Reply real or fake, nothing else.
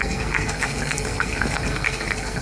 fake